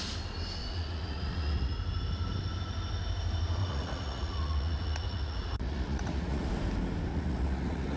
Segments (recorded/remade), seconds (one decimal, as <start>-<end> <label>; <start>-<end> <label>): 0.0-0.6 recorded; 0.6-1.7 remade; 1.7-3.6 recorded; 3.6-6.5 remade; 6.5-7.1 recorded; 7.1-8.0 remade